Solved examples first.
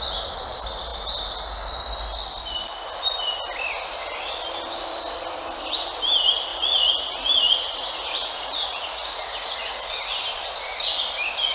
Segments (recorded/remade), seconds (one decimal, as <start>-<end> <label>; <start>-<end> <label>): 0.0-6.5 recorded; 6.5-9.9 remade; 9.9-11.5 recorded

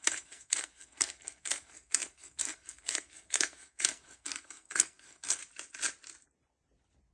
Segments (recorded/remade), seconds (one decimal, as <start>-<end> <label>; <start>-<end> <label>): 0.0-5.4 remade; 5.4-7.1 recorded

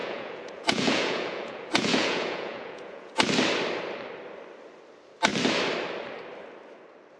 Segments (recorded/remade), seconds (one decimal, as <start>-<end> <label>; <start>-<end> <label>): 0.0-3.1 remade; 3.1-7.2 recorded

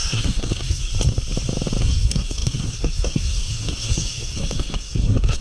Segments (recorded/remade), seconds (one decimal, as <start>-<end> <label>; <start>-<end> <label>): 0.0-0.9 remade; 0.9-1.8 recorded; 1.8-5.4 remade